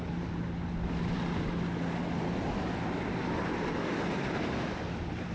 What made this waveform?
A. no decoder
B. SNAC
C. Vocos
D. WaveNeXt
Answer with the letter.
A